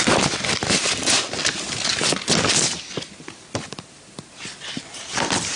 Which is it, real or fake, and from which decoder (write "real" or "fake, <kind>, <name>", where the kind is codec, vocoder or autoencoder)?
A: real